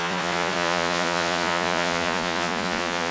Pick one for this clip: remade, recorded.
remade